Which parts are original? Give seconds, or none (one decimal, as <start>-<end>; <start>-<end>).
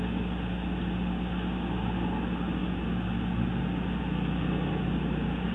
0.0-5.5